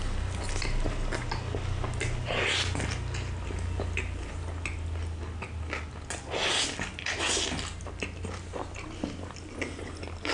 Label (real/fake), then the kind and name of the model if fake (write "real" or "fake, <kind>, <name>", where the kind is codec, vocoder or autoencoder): real